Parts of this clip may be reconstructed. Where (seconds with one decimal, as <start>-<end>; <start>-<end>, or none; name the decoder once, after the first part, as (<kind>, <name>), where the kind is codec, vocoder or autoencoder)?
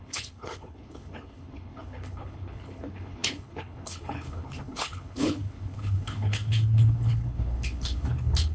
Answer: 0.0-8.5 (codec, HILCodec)